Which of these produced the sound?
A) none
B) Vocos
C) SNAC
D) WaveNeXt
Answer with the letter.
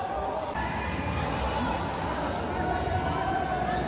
A